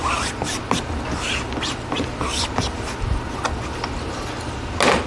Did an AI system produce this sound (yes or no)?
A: no